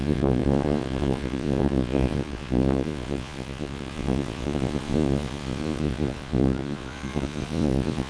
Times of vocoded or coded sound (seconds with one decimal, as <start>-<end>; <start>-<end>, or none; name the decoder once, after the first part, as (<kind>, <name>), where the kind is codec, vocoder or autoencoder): 0.0-8.1 (vocoder, Vocos)